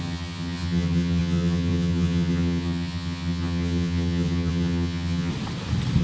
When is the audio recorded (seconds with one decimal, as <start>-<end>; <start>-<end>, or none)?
5.3-6.0